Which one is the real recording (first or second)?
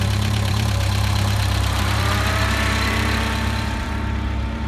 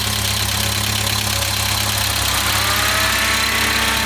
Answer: second